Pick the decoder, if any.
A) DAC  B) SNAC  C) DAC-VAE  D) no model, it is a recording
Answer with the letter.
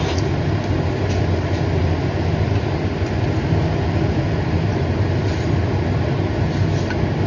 D